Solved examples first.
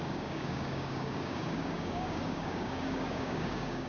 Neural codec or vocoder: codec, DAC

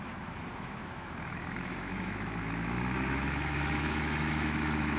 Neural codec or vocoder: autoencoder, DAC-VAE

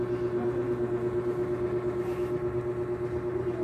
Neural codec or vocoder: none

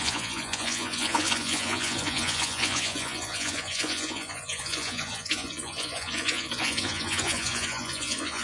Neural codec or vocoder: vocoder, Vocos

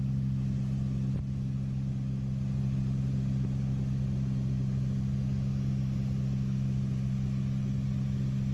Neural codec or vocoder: none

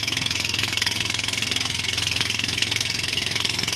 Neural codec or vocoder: codec, SNAC